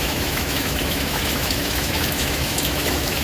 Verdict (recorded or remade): remade